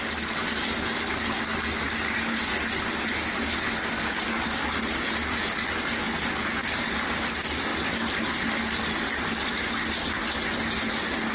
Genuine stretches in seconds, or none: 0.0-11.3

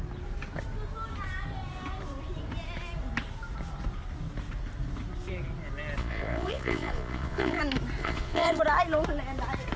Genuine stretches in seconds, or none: 0.0-6.0; 7.6-8.0; 8.6-9.8